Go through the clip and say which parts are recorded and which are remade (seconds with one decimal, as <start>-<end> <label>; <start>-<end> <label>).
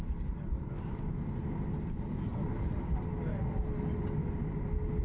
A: 0.0-5.0 recorded